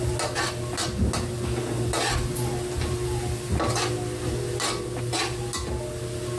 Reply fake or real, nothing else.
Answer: real